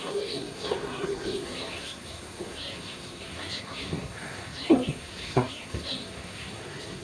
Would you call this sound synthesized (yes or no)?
yes